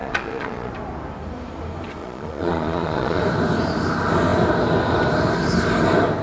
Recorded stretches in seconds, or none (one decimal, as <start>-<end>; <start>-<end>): 0.7-2.0; 3.2-6.2